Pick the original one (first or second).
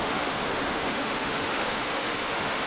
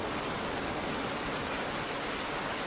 second